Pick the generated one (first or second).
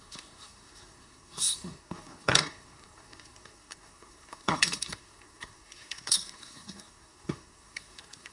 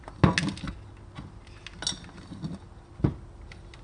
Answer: first